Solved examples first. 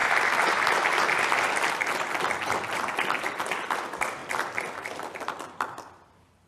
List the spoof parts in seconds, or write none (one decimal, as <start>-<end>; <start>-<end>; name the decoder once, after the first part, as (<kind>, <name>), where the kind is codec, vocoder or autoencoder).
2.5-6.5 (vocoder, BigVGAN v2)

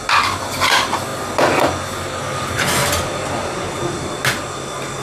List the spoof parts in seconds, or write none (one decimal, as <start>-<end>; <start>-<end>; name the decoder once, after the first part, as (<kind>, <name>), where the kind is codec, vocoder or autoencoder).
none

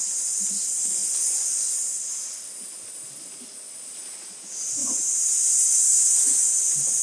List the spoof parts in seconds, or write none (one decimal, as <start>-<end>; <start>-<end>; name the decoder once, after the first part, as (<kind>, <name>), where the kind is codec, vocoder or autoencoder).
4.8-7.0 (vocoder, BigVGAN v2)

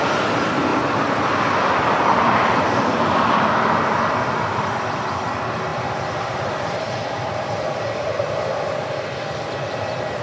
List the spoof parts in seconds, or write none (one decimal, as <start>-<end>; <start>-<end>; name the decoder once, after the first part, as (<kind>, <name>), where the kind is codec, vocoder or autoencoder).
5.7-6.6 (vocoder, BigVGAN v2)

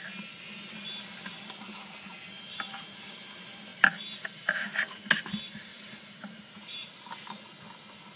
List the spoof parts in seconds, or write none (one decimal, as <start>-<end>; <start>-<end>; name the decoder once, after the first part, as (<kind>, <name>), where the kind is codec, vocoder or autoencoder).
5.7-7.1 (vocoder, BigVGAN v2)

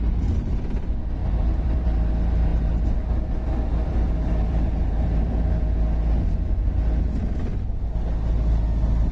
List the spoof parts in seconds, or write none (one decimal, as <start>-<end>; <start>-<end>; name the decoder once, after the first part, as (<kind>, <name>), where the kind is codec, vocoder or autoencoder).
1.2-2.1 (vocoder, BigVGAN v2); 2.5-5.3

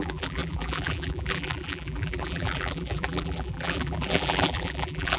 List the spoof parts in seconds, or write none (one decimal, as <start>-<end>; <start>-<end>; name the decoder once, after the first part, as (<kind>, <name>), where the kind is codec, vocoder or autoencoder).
0.0-5.2 (vocoder, BigVGAN v2)